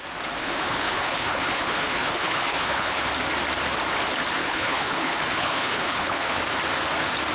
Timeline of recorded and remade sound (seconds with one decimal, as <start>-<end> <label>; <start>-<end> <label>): 0.0-0.4 recorded; 0.4-3.0 remade; 3.0-4.4 recorded; 4.4-6.4 remade; 6.4-7.3 recorded